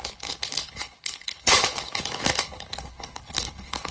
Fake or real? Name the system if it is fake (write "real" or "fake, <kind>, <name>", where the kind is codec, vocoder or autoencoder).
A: fake, codec, HILCodec